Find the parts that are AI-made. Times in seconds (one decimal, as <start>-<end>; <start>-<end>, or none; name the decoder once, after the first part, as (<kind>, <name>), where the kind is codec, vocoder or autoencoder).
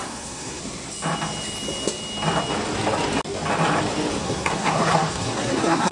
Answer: 0.0-0.6 (codec, SNAC); 4.2-5.9